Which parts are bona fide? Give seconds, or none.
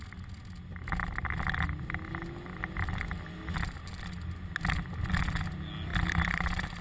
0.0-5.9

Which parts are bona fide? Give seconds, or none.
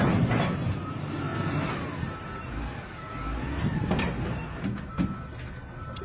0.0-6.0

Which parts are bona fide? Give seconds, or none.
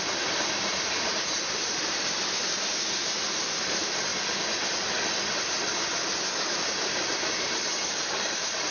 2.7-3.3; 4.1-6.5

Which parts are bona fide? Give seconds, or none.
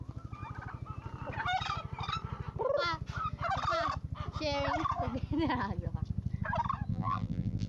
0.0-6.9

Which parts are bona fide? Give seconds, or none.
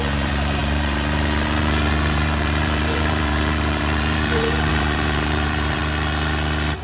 5.8-6.8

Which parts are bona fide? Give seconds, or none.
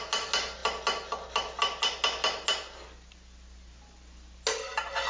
0.0-5.1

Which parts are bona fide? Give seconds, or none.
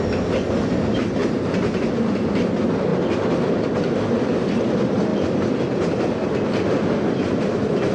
0.0-1.2; 1.8-2.9; 4.6-5.1; 5.6-7.9